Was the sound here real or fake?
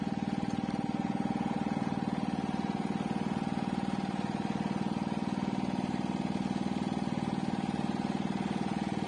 real